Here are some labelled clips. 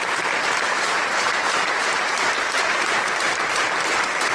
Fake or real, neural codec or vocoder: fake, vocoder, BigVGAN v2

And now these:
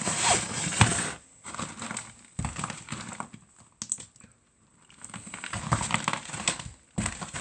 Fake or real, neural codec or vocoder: real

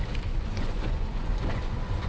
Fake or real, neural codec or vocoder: fake, vocoder, Vocos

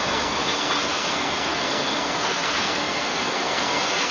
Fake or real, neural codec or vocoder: fake, codec, SNAC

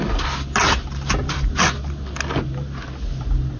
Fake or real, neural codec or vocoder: real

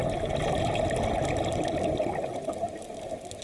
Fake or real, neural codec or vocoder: real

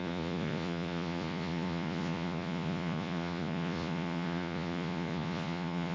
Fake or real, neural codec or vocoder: fake, vocoder, Vocos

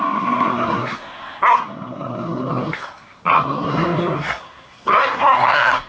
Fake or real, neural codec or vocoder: fake, codec, SNAC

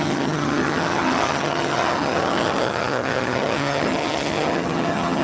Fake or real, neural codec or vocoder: fake, vocoder, HiFi-GAN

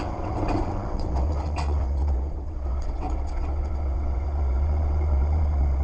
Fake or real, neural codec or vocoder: fake, vocoder, WaveNeXt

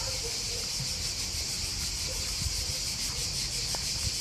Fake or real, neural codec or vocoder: real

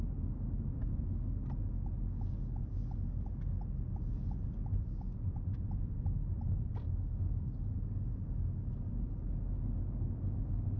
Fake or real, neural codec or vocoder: real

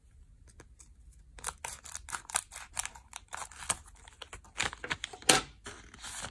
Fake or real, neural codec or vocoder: real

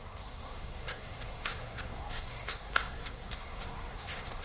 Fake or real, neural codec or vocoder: fake, codec, SNAC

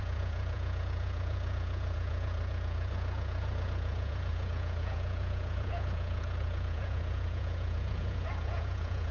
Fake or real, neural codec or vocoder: fake, vocoder, Vocos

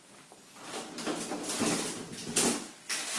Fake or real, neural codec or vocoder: real